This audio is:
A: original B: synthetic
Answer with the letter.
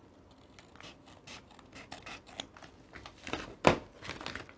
A